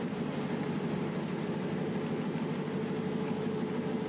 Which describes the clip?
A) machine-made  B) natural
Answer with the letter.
B